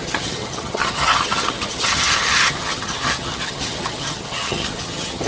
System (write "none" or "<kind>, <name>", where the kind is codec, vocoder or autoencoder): vocoder, HiFi-GAN